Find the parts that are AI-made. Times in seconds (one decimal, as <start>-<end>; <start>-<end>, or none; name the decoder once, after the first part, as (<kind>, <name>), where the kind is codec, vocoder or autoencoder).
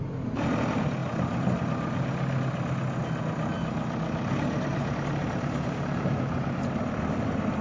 4.7-6.8 (vocoder, BigVGAN v2)